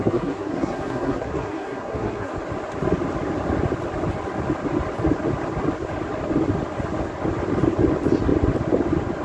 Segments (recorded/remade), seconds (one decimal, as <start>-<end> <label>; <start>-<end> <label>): 0.0-2.3 remade; 2.3-9.2 recorded